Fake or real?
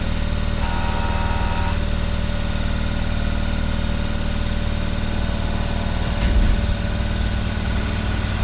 real